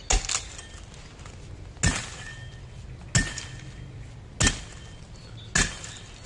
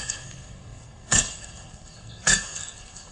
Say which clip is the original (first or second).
first